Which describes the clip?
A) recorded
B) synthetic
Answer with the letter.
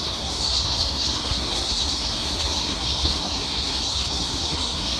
B